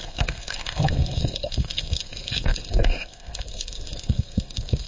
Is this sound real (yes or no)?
no